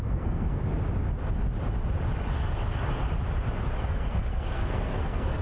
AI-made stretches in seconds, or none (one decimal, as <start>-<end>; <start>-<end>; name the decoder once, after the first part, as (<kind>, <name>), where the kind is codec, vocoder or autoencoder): 0.0-0.6 (codec, SNAC); 3.8-5.4